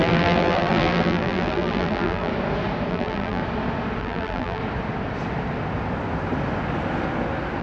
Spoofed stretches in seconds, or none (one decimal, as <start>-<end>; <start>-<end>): 0.0-2.3; 2.9-3.4; 4.0-4.6